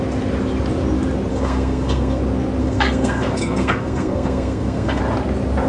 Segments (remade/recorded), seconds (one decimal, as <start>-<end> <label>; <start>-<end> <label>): 0.0-1.3 recorded; 1.3-2.2 remade; 2.2-2.6 recorded; 2.6-5.0 remade; 5.0-5.7 recorded